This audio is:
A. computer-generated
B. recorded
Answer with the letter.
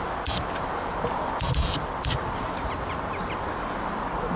B